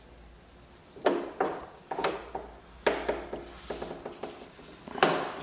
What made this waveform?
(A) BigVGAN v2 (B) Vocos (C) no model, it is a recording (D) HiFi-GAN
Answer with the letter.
C